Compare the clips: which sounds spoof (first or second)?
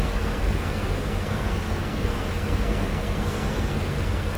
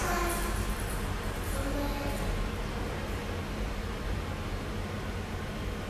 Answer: first